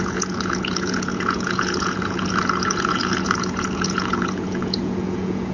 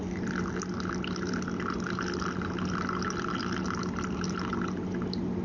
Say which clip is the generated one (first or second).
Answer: first